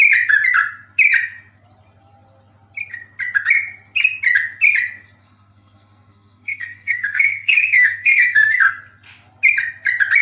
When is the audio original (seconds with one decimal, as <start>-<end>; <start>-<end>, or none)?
0.0-5.2; 8.7-10.2